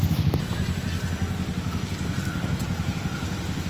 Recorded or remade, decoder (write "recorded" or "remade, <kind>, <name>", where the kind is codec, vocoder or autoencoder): recorded